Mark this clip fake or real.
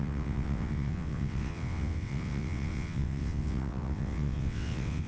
fake